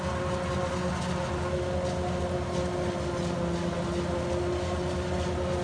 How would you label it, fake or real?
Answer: real